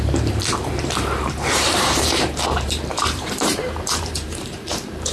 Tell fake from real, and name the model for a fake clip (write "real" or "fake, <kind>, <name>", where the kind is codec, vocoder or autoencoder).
fake, vocoder, BigVGAN v2